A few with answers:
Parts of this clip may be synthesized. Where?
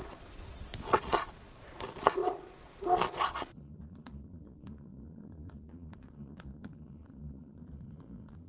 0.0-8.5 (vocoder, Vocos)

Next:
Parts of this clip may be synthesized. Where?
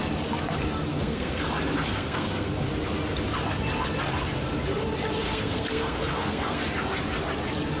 0.9-1.5 (codec, SNAC); 1.9-2.7; 5.2-6.6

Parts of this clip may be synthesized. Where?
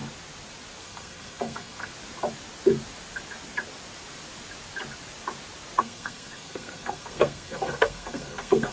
0.8-1.9 (codec, SNAC); 5.8-8.7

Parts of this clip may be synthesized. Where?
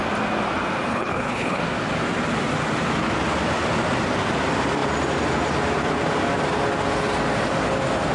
0.9-1.6 (codec, HILCodec)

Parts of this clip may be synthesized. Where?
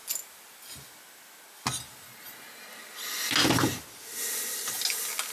none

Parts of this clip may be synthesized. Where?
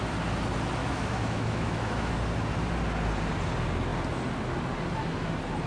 0.8-2.1 (autoencoder, DAC-VAE)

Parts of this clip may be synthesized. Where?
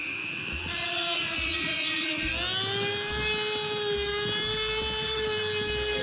0.0-2.3 (vocoder, Vocos)